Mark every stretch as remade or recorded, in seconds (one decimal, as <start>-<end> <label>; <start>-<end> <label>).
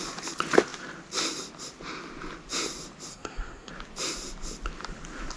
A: 0.0-3.1 recorded; 3.1-3.7 remade; 3.7-5.4 recorded